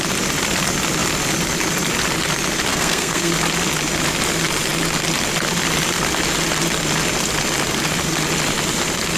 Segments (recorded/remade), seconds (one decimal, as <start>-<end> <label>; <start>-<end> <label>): 0.0-2.7 recorded; 2.7-3.3 remade; 3.3-9.2 recorded